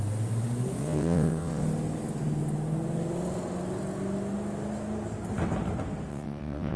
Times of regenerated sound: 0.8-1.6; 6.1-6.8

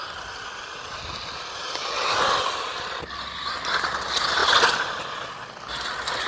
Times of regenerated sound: none

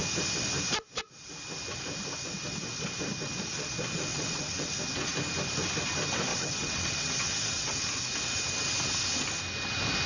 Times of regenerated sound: 4.1-4.8; 6.3-7.9

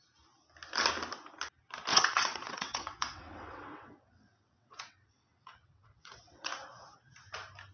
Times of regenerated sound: 1.9-6.5

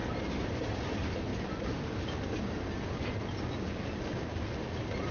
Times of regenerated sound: none

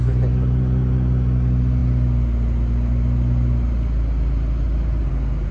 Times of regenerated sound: none

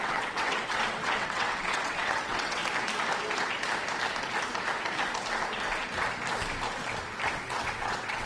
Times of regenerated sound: 0.0-2.6; 7.3-8.3